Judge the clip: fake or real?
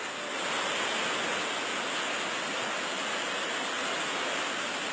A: real